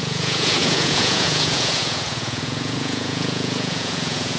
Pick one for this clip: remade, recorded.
remade